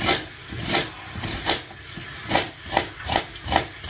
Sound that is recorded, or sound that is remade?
recorded